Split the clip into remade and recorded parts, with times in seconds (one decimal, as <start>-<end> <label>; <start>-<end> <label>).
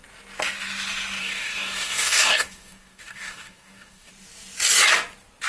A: 0.0-1.2 recorded; 1.2-4.1 remade; 4.1-5.5 recorded